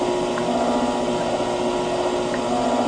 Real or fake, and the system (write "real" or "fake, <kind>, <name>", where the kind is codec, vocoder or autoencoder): real